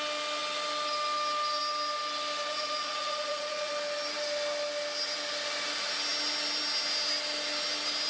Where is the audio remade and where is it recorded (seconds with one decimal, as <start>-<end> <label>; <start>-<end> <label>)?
0.0-2.5 recorded; 2.5-3.7 remade; 3.7-8.1 recorded